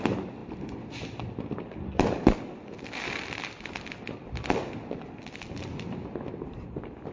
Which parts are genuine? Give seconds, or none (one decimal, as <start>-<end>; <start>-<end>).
0.0-0.4; 0.9-7.1